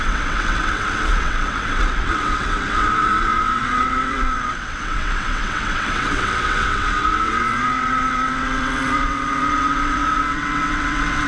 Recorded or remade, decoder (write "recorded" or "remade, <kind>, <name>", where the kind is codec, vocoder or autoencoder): remade, vocoder, WaveNeXt